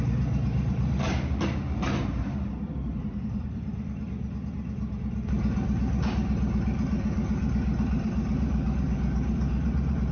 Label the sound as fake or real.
fake